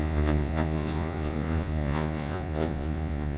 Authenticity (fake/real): fake